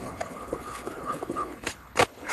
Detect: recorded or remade remade